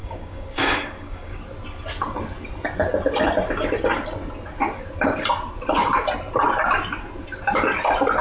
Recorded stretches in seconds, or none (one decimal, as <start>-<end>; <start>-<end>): 1.4-8.2